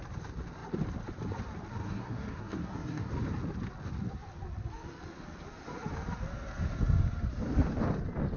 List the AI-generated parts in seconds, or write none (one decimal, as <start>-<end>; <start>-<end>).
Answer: 1.8-3.1